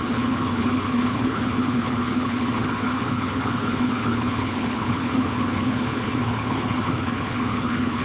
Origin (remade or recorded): remade